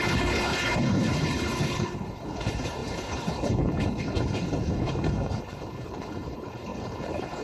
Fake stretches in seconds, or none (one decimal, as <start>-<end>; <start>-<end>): 0.0-7.4